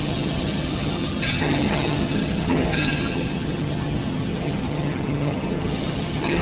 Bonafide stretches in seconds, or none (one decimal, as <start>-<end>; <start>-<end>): none